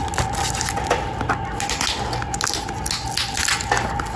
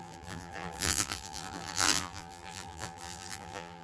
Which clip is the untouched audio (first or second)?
first